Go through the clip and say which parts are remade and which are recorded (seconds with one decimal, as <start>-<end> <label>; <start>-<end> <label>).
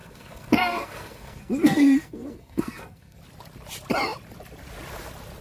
0.0-3.2 remade; 3.2-5.4 recorded